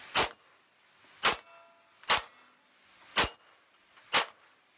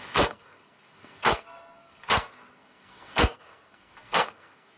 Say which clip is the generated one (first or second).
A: second